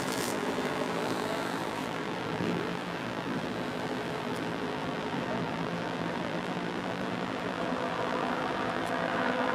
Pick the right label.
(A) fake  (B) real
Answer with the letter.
A